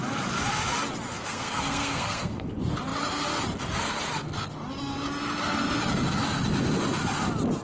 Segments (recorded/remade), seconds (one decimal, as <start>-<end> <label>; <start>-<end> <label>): 0.0-1.1 recorded; 1.1-2.5 remade; 2.5-7.6 recorded